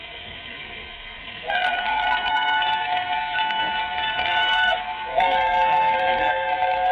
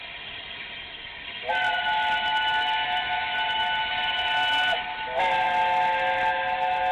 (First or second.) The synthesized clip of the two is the first